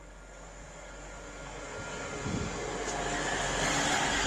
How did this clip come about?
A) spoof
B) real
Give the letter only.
B